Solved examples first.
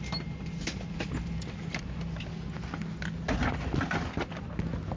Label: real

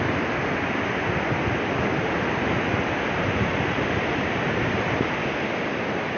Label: real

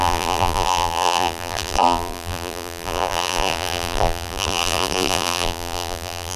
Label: fake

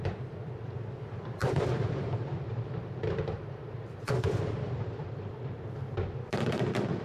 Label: fake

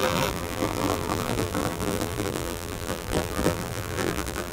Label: fake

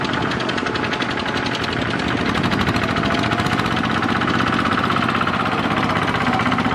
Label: real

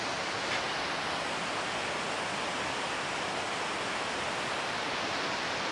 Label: real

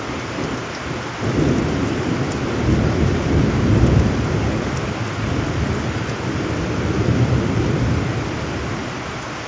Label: real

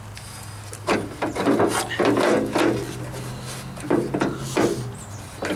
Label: real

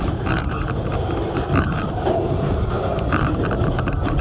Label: fake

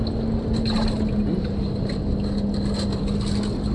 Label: real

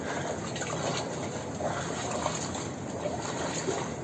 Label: real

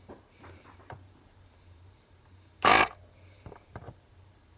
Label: fake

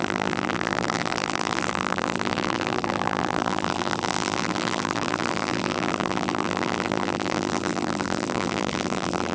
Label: fake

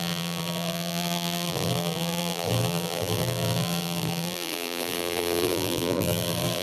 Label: fake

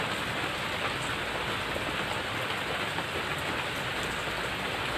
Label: real